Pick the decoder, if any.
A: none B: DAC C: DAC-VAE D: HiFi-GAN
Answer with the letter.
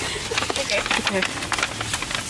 A